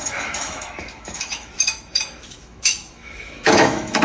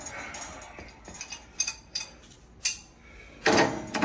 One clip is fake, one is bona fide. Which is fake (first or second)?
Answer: first